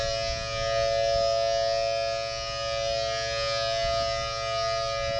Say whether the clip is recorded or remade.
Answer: recorded